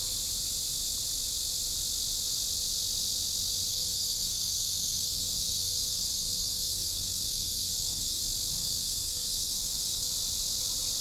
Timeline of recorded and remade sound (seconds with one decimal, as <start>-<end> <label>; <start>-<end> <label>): 0.0-3.7 recorded; 3.7-8.2 remade; 8.2-8.6 recorded; 8.6-10.1 remade; 10.1-11.0 recorded